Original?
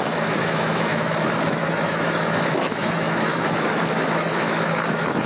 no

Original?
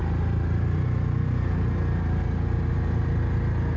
yes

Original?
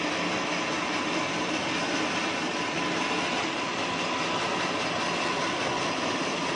no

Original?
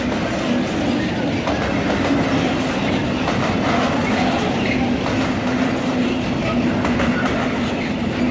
yes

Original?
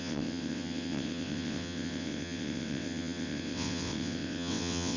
no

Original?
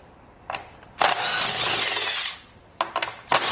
no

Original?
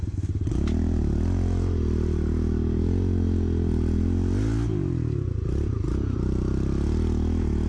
yes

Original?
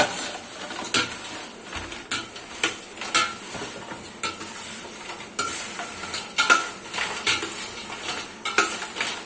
yes